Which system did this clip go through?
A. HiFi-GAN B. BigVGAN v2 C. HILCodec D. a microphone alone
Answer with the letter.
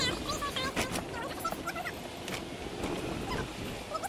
D